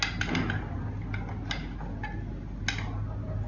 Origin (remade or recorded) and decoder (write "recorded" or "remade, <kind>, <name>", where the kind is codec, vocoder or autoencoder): recorded